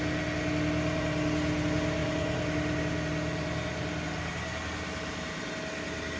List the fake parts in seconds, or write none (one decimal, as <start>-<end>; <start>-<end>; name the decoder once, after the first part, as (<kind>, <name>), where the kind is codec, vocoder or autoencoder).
none